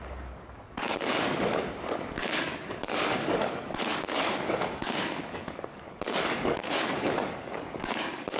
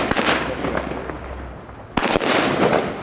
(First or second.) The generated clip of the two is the first